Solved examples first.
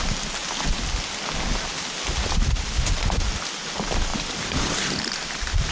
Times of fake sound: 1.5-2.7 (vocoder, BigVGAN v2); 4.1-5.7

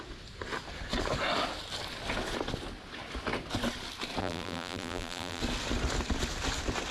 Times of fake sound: 4.2-5.4 (vocoder, BigVGAN v2)

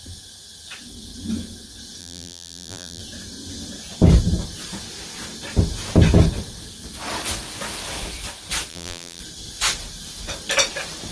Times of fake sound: 2.0-3.0 (vocoder, BigVGAN v2); 8.7-9.2

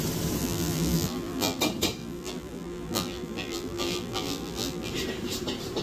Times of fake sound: 0.4-1.6 (vocoder, BigVGAN v2); 2.0-4.9

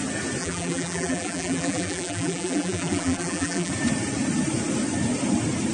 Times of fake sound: 0.4-3.7 (vocoder, BigVGAN v2)